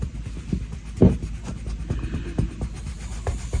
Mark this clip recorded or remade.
recorded